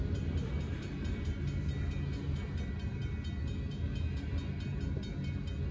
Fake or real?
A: real